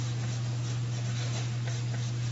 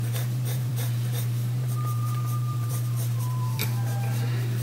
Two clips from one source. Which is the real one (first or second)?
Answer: first